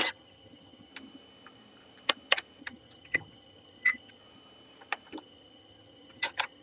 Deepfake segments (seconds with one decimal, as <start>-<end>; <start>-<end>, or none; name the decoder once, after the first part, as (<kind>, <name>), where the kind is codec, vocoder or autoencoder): 0.0-0.9 (vocoder, HiFi-GAN); 2.6-4.2; 5.2-6.6